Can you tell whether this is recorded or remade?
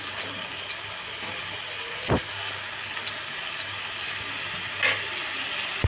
recorded